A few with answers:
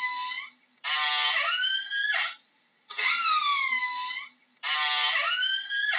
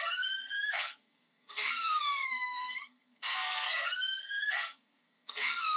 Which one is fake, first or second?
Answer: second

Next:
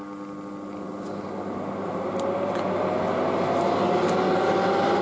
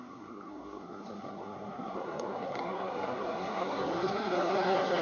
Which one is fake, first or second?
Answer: second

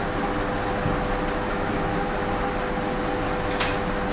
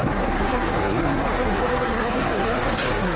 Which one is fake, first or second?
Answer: second